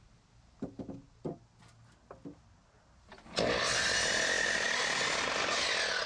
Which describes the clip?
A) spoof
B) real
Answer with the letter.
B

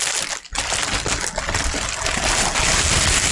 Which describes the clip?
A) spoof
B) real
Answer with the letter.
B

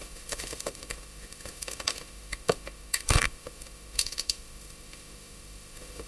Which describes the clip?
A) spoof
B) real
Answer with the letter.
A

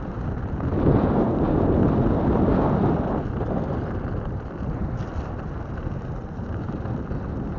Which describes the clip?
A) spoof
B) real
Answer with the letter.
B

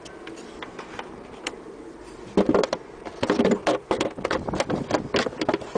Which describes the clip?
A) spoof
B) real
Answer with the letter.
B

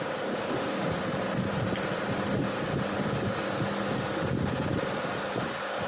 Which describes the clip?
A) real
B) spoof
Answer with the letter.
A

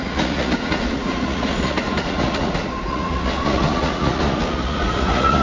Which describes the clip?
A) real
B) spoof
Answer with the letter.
B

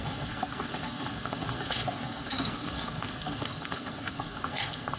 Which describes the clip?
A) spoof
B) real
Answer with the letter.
A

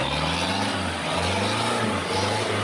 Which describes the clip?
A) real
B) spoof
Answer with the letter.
B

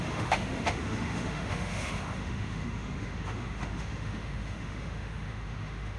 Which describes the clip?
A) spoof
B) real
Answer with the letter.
A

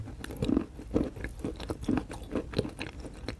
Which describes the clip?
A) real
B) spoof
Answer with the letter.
A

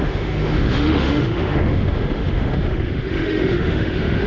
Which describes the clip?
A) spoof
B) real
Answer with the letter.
A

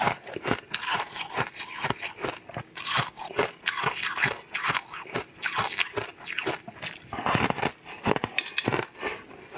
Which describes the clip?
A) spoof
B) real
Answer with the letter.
B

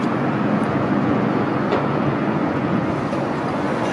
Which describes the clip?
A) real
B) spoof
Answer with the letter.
B